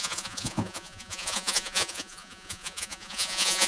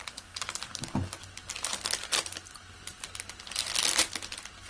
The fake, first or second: first